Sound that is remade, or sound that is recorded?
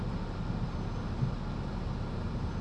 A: recorded